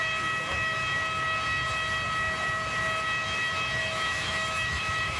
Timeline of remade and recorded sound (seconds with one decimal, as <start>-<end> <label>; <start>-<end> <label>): 0.0-3.8 recorded; 3.8-5.2 remade